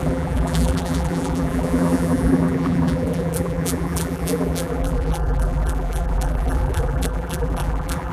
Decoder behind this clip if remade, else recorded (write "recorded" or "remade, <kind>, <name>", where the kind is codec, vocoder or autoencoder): remade, vocoder, BigVGAN v2